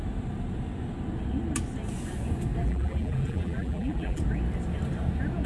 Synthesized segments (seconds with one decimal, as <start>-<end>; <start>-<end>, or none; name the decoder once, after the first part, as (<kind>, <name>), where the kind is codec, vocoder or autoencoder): 2.6-4.2 (vocoder, BigVGAN v2)